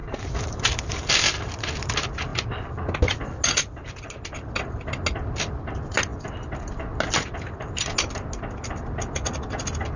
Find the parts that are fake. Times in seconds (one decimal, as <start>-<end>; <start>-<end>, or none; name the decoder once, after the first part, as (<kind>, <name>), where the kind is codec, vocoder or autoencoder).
0.0-1.1 (vocoder, BigVGAN v2)